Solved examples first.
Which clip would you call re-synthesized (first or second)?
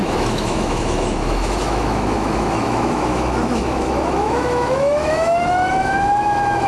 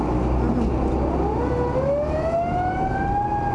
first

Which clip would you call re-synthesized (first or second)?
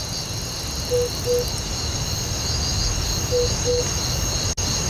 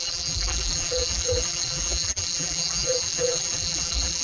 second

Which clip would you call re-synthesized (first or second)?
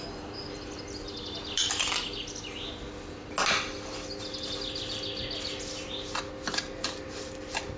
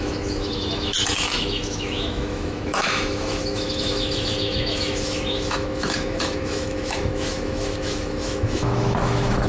second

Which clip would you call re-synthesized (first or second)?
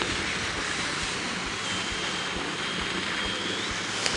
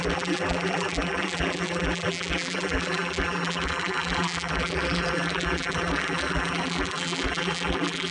second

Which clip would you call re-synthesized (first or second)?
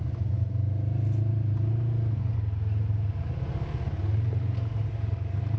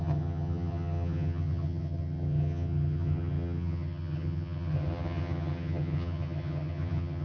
second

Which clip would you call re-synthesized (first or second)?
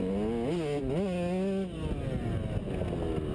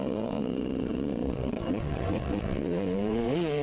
second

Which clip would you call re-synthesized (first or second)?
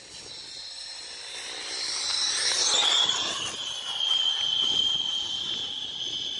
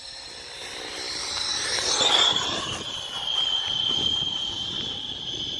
second